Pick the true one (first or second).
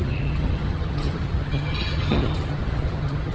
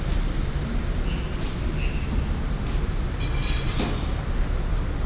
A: second